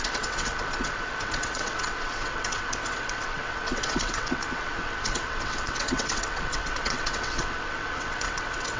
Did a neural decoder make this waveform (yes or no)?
yes